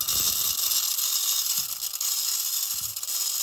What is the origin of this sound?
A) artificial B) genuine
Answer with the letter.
B